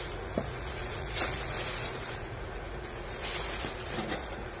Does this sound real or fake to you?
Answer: fake